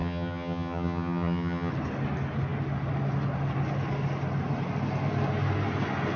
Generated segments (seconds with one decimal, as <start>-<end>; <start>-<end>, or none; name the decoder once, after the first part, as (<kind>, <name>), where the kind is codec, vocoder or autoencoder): 0.0-1.7 (vocoder, HiFi-GAN)